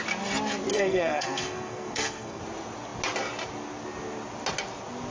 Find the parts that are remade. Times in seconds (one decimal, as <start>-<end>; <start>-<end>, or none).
0.7-2.4